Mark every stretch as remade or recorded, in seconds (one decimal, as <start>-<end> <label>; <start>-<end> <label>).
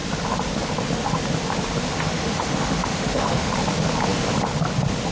0.0-1.9 recorded; 1.9-3.5 remade; 3.5-5.1 recorded